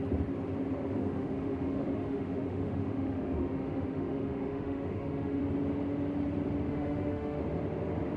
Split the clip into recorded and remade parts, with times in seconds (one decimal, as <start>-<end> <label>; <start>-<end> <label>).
0.0-1.0 recorded; 1.0-5.4 remade; 5.4-6.7 recorded; 6.7-7.4 remade; 7.4-8.2 recorded

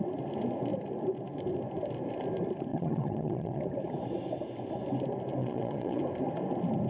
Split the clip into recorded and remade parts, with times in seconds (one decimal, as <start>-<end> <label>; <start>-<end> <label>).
0.0-2.7 recorded; 2.7-3.6 remade; 3.6-5.4 recorded; 5.4-6.0 remade; 6.0-6.9 recorded

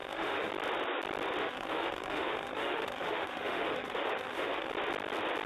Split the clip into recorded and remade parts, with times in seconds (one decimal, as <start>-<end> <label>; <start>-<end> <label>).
0.0-0.5 remade; 0.5-1.4 recorded; 1.4-4.7 remade; 4.7-5.5 recorded

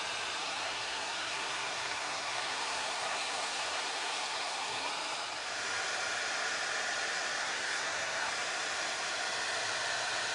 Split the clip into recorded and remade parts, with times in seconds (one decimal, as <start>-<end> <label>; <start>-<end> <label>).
0.0-0.4 recorded; 0.4-4.9 remade; 4.9-7.4 recorded; 7.4-8.3 remade; 8.3-10.3 recorded

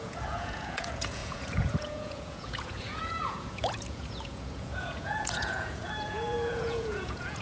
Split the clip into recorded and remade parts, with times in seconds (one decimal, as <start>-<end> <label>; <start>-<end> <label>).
0.0-7.4 remade